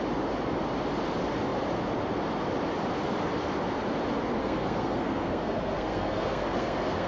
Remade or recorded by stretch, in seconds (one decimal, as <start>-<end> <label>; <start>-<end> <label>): 0.0-4.4 recorded; 4.4-7.1 remade